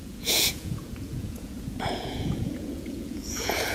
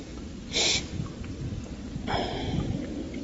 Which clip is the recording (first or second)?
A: second